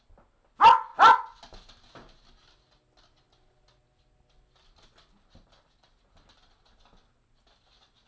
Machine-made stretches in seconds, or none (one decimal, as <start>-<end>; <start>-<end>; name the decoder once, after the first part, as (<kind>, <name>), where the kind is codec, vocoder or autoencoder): none